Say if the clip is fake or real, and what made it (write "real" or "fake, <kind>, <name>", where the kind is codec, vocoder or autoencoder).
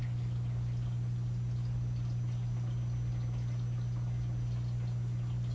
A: real